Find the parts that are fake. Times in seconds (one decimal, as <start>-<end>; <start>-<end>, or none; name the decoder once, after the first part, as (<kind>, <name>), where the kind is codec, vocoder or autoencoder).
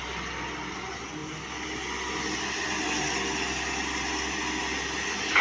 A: none